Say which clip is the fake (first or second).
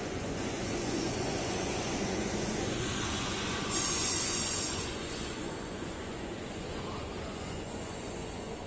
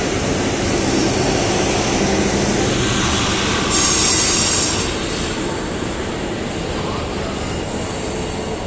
first